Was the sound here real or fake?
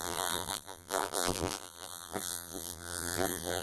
fake